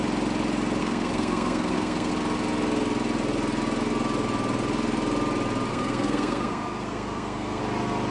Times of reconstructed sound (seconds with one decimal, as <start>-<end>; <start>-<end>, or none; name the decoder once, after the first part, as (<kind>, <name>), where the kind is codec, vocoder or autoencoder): 0.8-2.1 (codec, SNAC); 5.7-7.6